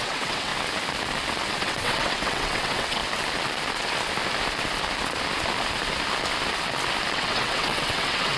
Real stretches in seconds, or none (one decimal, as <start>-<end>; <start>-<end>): 0.5-1.6; 3.0-7.1